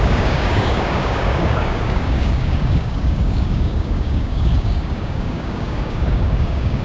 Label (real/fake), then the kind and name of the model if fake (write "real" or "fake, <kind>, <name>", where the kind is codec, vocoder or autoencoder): fake, codec, DAC